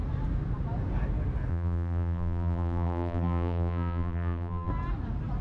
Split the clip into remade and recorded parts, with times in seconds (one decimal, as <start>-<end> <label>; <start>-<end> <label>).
0.0-1.5 recorded; 1.5-4.7 remade; 4.7-5.4 recorded